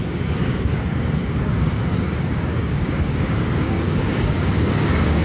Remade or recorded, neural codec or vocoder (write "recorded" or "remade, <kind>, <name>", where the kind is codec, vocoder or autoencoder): remade, codec, DAC